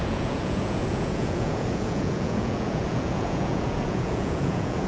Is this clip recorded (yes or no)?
no